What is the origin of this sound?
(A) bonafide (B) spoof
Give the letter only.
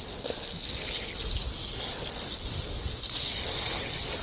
A